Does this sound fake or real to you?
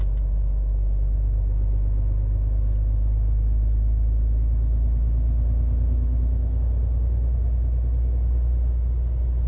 real